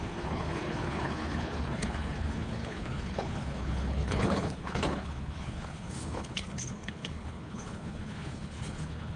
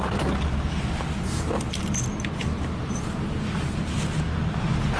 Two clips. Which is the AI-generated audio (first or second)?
first